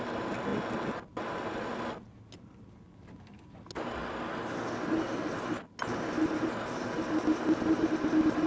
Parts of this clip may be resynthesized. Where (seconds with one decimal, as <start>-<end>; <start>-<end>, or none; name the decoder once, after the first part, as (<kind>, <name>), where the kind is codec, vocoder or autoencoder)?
none